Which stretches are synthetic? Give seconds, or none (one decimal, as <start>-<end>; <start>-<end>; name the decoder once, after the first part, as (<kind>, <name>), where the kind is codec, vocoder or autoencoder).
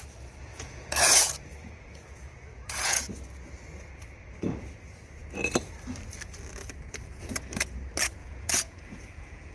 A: 0.5-3.1 (vocoder, Vocos); 8.2-9.5